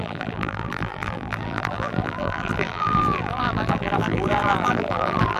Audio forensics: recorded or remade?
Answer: remade